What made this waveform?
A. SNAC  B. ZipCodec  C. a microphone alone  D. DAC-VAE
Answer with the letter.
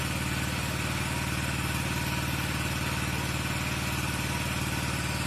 C